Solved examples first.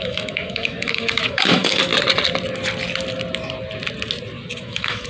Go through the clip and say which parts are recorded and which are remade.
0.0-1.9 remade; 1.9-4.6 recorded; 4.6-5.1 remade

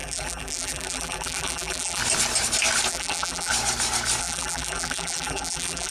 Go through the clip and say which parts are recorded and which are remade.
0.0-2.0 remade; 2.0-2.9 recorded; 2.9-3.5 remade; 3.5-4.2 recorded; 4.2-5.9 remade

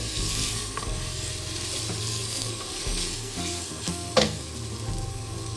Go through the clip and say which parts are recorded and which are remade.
0.0-1.3 remade; 1.3-2.0 recorded; 2.0-4.5 remade; 4.5-5.1 recorded; 5.1-5.6 remade